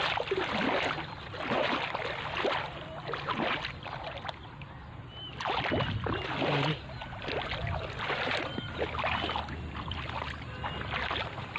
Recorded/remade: recorded